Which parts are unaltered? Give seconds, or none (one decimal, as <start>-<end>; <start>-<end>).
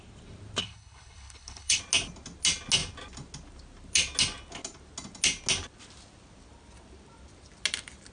0.0-0.6; 1.8-8.1